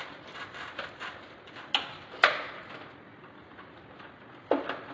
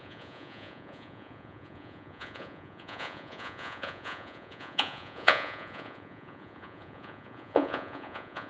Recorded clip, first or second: first